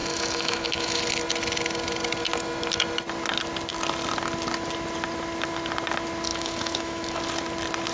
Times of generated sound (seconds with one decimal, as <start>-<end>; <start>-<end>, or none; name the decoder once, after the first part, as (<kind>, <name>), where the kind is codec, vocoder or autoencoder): 0.0-1.0 (autoencoder, DAC-VAE); 6.3-7.2